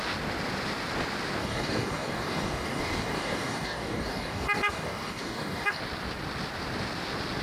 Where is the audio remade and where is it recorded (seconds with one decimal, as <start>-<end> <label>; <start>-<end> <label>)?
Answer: 0.0-1.4 recorded; 1.4-5.8 remade; 5.8-7.4 recorded